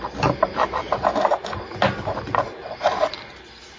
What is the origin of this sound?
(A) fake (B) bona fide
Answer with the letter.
B